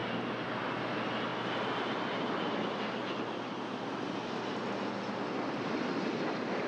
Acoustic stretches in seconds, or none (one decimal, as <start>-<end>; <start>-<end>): 0.0-6.7